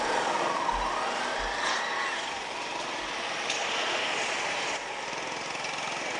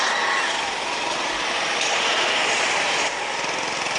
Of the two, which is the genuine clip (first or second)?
first